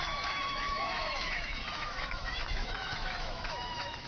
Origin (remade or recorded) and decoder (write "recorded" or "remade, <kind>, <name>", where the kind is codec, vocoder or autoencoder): remade, autoencoder, DAC-VAE